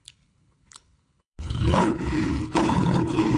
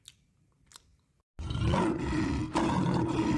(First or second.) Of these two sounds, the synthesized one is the first